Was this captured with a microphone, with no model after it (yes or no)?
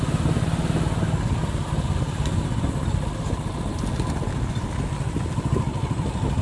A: yes